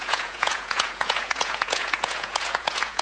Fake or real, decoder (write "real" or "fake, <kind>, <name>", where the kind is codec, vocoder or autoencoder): fake, vocoder, Vocos